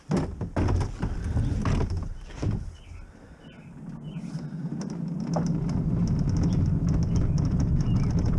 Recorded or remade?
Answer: recorded